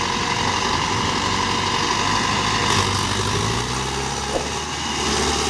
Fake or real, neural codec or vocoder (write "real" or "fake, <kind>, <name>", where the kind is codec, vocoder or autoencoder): real